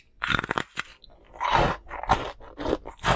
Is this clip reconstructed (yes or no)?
no